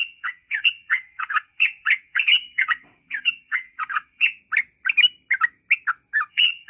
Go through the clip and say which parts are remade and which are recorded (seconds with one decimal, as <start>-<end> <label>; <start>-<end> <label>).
0.0-4.4 remade; 4.4-6.3 recorded; 6.3-6.7 remade